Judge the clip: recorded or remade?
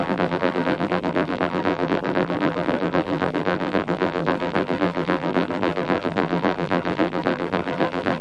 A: remade